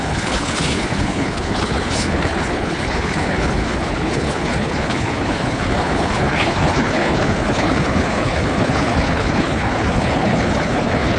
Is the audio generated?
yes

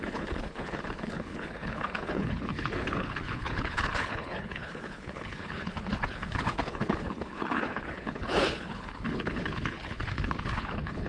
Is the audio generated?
yes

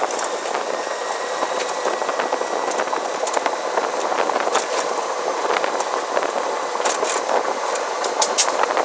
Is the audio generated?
no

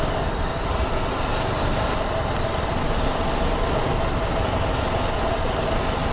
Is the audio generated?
no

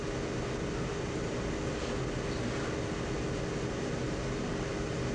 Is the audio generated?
no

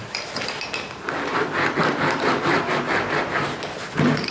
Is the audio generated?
no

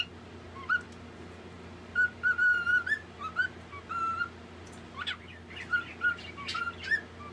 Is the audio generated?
no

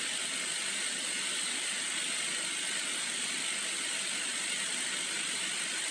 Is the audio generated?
no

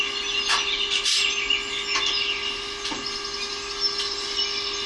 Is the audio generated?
no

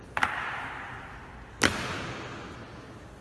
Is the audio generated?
no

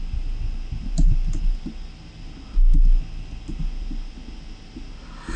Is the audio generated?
no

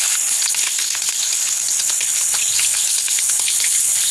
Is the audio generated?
yes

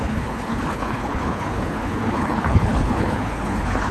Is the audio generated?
yes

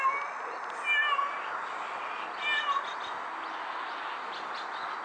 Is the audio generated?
no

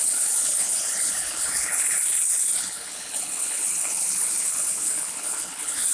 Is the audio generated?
yes